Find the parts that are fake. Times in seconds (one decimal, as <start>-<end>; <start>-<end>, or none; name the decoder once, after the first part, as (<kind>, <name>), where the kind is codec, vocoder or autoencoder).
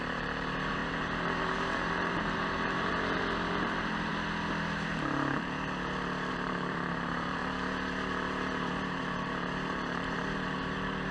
0.0-4.1 (vocoder, BigVGAN v2); 6.3-7.4; 8.6-11.1